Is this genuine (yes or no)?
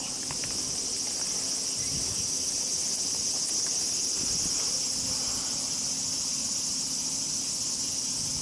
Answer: yes